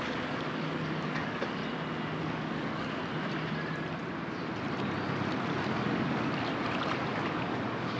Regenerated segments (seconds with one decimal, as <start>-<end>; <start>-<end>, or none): 0.0-1.6; 2.2-3.0; 5.7-6.3; 7.3-8.0